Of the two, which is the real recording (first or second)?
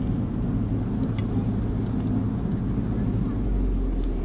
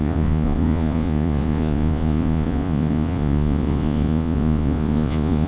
first